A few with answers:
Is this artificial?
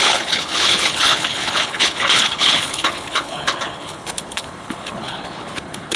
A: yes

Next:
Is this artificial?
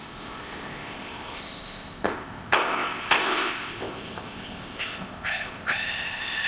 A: yes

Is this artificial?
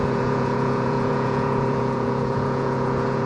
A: yes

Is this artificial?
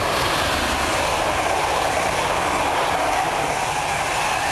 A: no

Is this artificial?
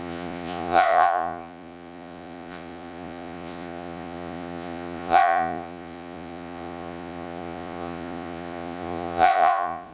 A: yes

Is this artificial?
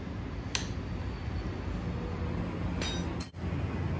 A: no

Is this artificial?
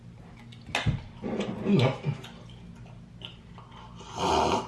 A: no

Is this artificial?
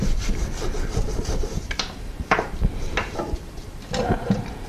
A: yes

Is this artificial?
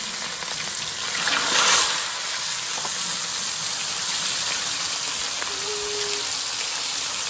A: no